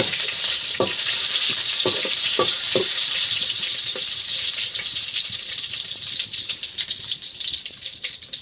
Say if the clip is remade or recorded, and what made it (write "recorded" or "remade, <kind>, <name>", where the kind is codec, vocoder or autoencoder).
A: remade, vocoder, BigVGAN v2